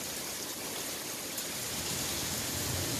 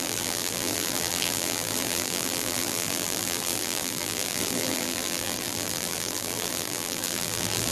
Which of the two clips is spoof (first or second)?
second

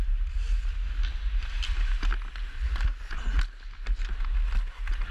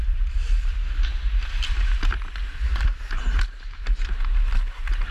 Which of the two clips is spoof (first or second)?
second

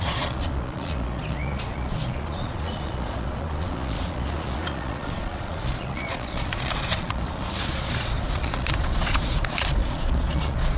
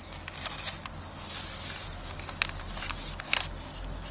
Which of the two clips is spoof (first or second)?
first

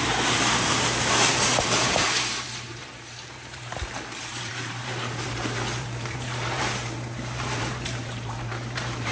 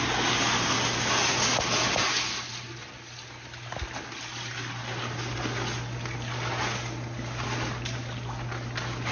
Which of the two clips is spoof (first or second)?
first